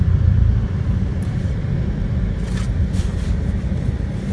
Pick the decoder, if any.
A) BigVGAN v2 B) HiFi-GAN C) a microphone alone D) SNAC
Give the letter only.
A